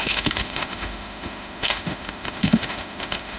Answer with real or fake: fake